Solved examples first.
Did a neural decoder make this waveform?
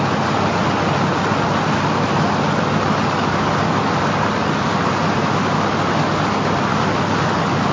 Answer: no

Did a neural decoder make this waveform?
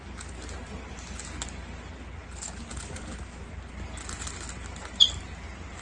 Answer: no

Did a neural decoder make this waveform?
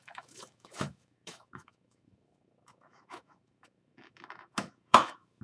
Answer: yes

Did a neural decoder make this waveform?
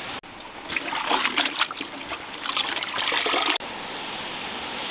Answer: no